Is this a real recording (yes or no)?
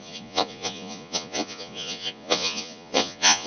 no